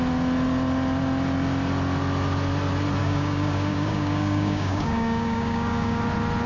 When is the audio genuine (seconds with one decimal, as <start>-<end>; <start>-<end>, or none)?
0.0-3.0; 6.0-6.5